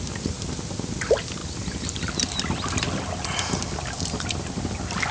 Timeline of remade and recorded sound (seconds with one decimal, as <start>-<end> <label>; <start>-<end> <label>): 0.0-5.1 recorded